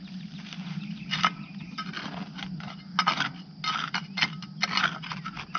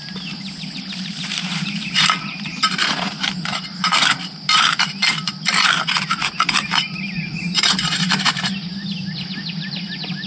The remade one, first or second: second